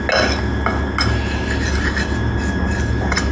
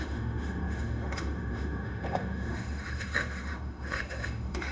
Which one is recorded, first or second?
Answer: first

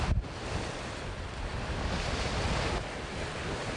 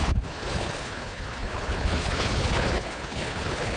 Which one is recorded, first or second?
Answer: first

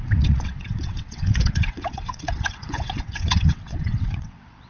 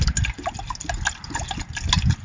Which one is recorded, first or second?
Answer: second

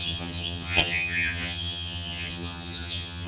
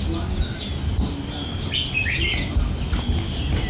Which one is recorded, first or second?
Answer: second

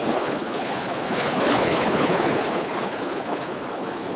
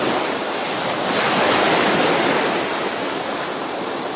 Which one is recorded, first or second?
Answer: second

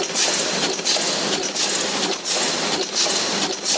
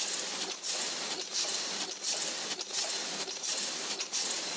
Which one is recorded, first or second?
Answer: first